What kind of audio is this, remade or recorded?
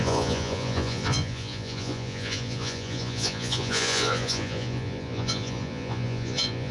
remade